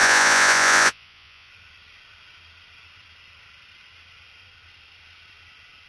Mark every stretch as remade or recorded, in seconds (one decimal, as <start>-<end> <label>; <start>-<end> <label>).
0.0-1.5 remade; 1.5-5.9 recorded